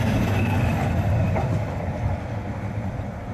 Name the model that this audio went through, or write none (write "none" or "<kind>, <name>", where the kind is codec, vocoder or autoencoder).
none